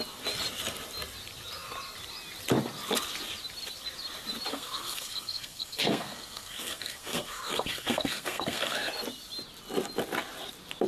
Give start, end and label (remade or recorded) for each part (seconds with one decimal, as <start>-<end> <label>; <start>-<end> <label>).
0.0-4.5 recorded; 4.5-8.9 remade; 8.9-10.9 recorded

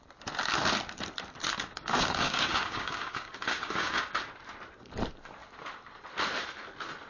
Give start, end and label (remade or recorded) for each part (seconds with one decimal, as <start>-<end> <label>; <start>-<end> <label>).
0.0-1.6 recorded; 1.6-4.2 remade; 4.2-7.1 recorded